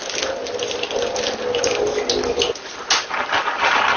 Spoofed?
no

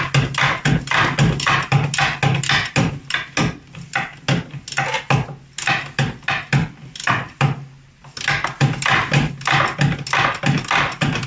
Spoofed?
no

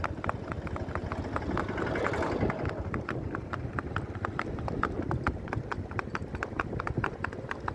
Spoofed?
no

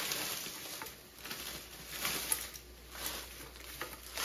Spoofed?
no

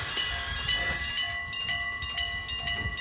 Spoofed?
no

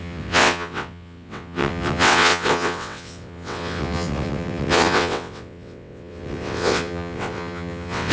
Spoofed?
yes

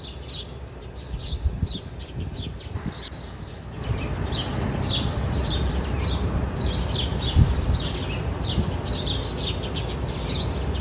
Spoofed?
no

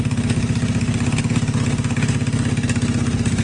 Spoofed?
no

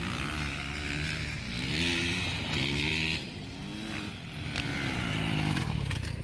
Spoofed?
no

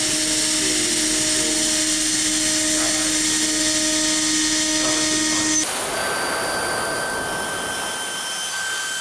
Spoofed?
no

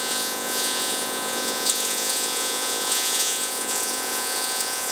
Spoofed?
yes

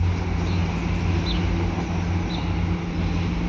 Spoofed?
no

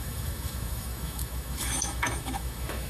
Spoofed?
yes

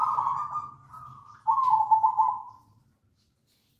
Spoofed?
no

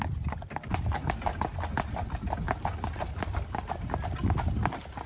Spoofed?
no